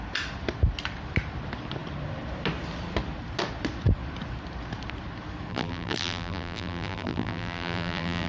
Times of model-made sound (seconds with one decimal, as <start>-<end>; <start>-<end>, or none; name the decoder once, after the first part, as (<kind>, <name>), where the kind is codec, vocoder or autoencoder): 5.5-8.3 (vocoder, BigVGAN v2)